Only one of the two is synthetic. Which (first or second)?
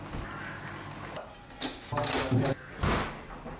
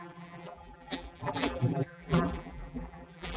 second